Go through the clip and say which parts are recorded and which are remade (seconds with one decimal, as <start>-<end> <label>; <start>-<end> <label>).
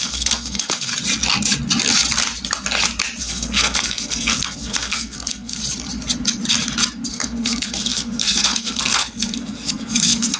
0.0-0.9 remade; 0.9-3.2 recorded; 3.2-5.6 remade; 5.6-7.1 recorded; 7.1-10.4 remade